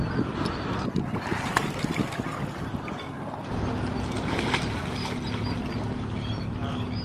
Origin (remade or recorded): recorded